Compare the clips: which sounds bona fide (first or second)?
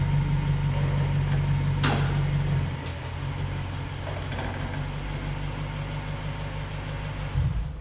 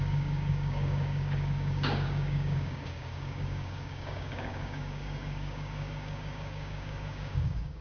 first